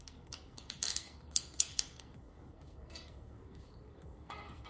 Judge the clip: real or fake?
fake